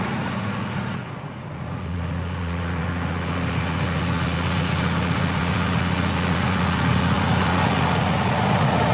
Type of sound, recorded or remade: remade